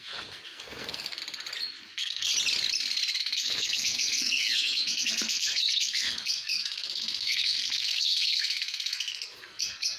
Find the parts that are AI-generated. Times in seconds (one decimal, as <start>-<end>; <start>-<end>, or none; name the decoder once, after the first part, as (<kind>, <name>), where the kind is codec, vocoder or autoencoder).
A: 0.0-1.2 (codec, SNAC); 1.8-2.3; 3.2-10.0